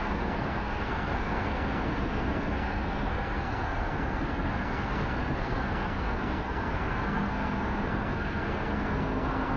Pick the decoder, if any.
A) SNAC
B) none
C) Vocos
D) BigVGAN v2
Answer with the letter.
A